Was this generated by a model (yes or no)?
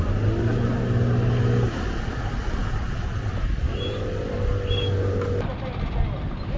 no